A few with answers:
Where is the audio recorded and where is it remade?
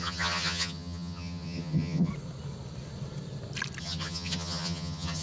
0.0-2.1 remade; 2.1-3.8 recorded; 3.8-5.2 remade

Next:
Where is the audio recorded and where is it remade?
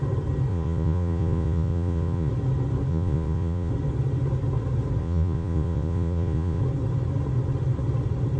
0.0-0.5 recorded; 0.5-2.3 remade; 2.3-2.9 recorded; 2.9-3.7 remade; 3.7-5.0 recorded; 5.0-6.6 remade; 6.6-8.4 recorded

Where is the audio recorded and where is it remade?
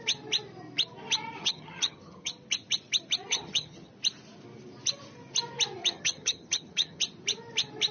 0.0-1.4 recorded; 1.4-2.3 remade; 2.3-3.3 recorded; 3.3-3.9 remade; 3.9-5.8 recorded; 5.8-7.0 remade; 7.0-7.9 recorded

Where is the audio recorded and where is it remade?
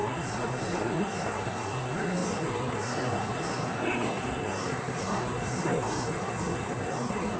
0.0-7.4 remade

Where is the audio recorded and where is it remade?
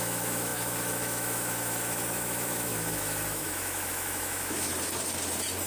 0.0-4.7 remade; 4.7-5.7 recorded